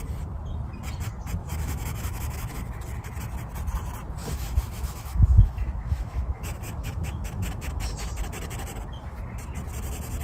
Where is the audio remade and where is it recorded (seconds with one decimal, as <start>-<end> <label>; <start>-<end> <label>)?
0.0-1.4 recorded; 1.4-2.8 remade; 2.8-4.2 recorded; 4.2-8.2 remade; 8.2-10.2 recorded